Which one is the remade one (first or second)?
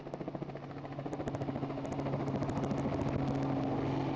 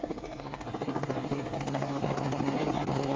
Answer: second